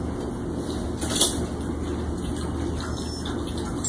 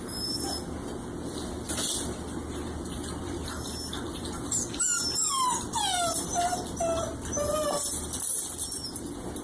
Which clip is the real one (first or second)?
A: first